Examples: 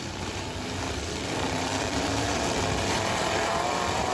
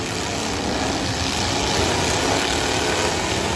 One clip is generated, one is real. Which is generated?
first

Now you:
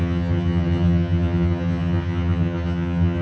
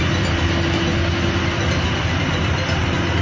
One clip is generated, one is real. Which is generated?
first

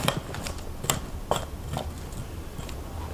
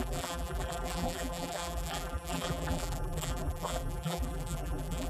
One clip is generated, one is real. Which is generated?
second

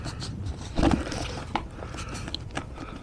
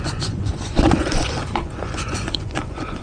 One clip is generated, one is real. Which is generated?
second